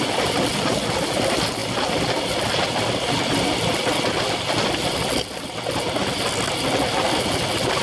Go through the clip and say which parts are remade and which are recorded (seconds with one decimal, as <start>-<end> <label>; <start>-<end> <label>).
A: 0.0-7.8 recorded